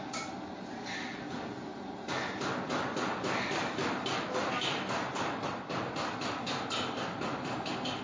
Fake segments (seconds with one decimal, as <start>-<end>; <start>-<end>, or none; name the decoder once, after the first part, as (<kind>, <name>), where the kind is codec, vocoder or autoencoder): none